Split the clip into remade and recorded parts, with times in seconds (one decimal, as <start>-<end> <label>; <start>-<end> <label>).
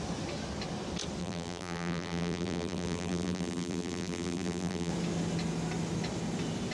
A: 0.0-1.2 recorded; 1.2-4.9 remade; 4.9-6.7 recorded